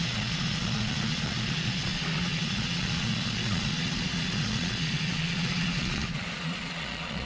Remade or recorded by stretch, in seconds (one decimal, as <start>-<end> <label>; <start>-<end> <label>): 0.0-7.3 remade